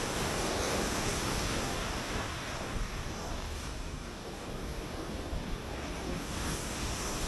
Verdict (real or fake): fake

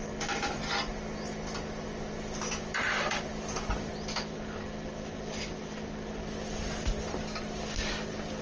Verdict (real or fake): real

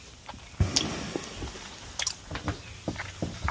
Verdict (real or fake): real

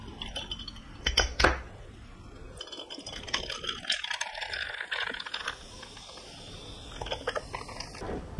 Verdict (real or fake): real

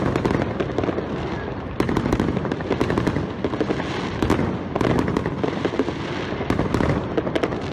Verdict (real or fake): real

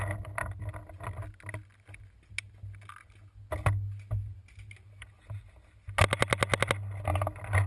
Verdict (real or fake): real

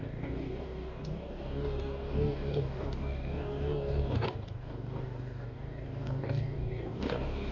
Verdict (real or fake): fake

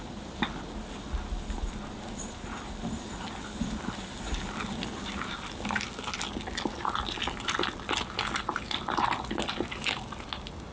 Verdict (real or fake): real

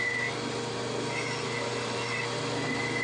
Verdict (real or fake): real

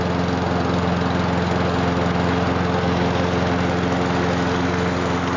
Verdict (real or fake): real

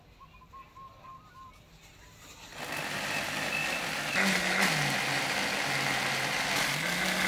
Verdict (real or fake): real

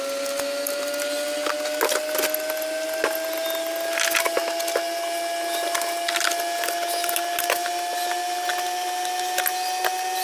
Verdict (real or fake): real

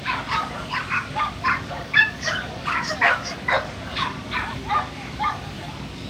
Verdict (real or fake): fake